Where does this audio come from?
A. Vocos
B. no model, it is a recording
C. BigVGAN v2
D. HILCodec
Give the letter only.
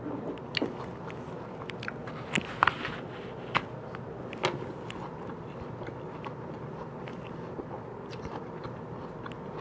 B